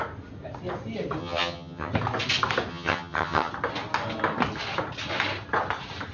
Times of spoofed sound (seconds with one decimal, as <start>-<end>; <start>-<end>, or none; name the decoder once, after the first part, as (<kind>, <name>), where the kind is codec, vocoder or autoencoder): 1.2-1.9 (vocoder, HiFi-GAN); 2.7-3.5